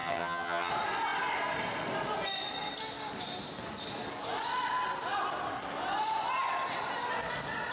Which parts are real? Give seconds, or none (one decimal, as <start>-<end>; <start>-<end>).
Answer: 0.7-7.7